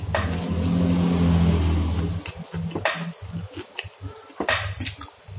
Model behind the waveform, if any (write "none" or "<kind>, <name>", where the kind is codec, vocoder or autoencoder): none